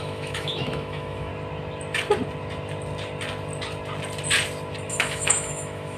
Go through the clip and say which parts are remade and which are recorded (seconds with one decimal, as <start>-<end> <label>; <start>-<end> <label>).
0.0-1.3 remade; 1.3-4.9 recorded; 4.9-6.0 remade